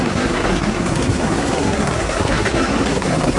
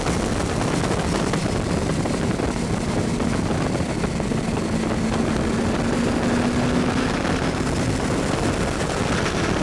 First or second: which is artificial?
first